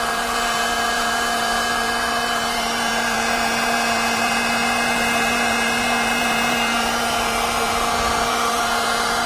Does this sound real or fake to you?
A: fake